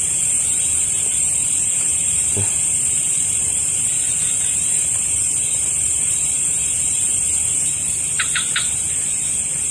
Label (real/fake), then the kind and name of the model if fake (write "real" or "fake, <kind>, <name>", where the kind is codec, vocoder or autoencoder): fake, vocoder, BigVGAN v2